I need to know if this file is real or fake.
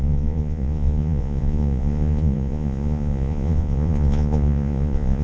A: fake